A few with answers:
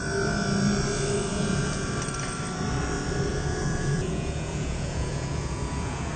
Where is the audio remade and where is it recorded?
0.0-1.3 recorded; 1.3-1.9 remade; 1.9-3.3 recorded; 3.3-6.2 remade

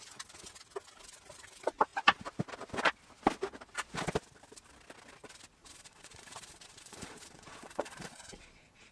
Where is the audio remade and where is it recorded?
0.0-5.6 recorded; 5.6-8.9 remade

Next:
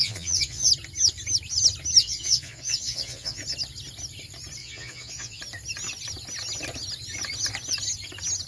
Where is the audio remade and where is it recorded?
0.0-0.7 remade; 0.7-2.0 recorded; 2.0-3.4 remade; 3.4-4.6 recorded; 4.6-5.4 remade; 5.4-8.5 recorded